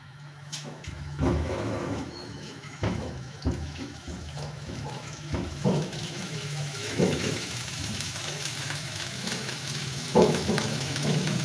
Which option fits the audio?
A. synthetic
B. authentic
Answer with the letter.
A